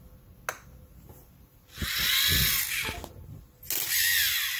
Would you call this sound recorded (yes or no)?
yes